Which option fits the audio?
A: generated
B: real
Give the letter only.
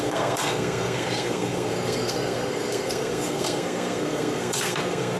A